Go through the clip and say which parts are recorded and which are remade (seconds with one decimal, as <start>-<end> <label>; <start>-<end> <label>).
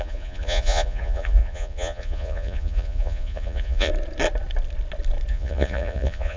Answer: 0.0-3.9 remade; 3.9-5.3 recorded; 5.3-6.4 remade